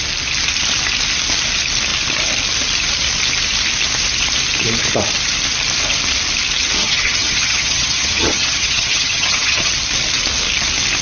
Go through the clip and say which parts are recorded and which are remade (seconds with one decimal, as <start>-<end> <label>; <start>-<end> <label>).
0.0-6.8 recorded; 6.8-9.7 remade; 9.7-11.0 recorded